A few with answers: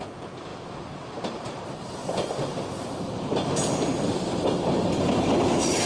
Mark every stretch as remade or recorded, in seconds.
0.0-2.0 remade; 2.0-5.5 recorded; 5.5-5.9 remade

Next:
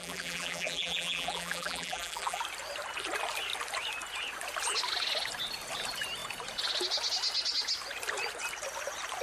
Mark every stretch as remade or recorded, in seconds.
0.0-2.4 remade; 2.4-9.2 recorded

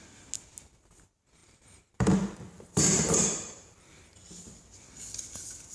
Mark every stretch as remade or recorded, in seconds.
0.0-1.4 recorded; 1.4-4.0 remade; 4.0-5.7 recorded

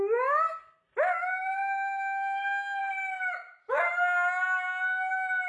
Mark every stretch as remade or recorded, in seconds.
0.0-5.5 recorded

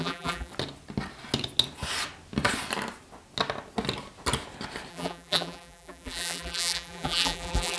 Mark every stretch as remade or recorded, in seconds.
0.0-0.5 remade; 0.5-4.9 recorded; 4.9-7.8 remade

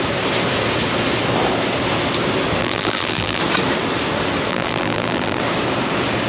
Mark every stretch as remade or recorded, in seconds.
0.0-2.6 recorded; 2.6-3.4 remade; 3.4-4.5 recorded; 4.5-5.4 remade; 5.4-6.3 recorded